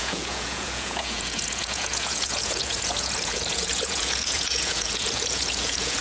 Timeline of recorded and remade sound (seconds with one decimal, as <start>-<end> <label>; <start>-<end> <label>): 0.0-6.0 remade